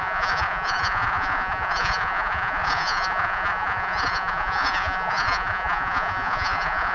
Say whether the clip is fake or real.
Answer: fake